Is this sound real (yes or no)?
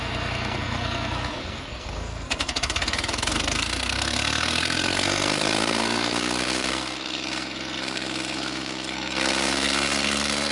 no